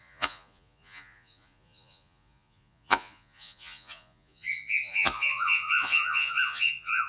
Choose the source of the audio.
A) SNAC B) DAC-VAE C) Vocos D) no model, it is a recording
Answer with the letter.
C